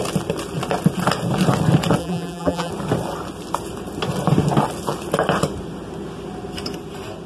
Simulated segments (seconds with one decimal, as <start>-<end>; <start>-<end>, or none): 2.0-2.7